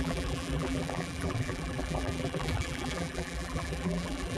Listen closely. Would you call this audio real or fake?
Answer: fake